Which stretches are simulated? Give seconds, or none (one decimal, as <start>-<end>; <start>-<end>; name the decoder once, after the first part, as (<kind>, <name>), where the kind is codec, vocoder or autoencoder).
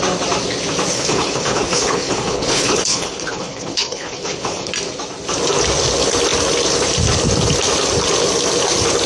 0.9-4.7 (codec, HILCodec)